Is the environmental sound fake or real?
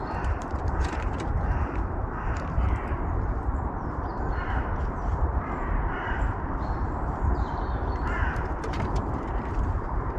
fake